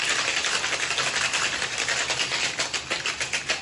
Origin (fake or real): real